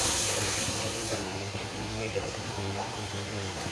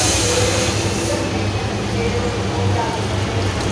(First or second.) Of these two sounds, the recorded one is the second